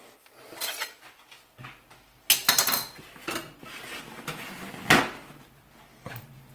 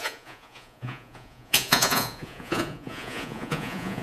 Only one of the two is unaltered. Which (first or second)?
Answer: first